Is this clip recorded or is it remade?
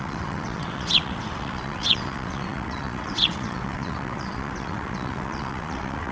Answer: remade